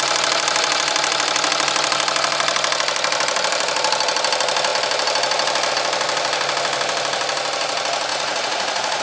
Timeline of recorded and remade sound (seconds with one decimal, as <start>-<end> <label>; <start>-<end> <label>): 0.0-8.1 recorded; 8.1-9.0 remade